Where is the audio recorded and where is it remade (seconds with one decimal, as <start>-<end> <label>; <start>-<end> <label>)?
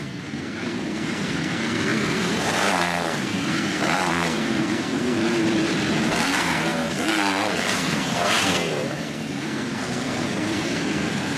0.0-5.2 remade; 5.2-6.0 recorded; 6.0-11.4 remade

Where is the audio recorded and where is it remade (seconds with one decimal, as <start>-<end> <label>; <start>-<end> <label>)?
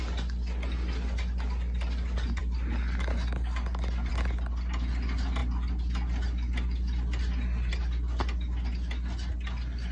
0.0-9.9 recorded